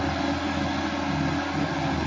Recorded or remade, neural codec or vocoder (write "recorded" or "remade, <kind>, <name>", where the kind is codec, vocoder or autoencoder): recorded